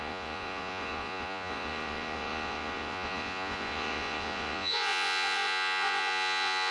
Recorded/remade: remade